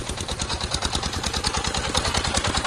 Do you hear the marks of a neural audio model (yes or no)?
no